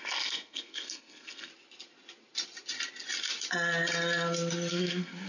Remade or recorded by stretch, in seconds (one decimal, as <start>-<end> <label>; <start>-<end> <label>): 0.0-1.5 remade; 1.5-4.7 recorded; 4.7-5.3 remade